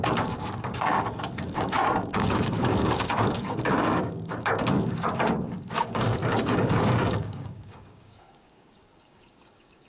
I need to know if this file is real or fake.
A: fake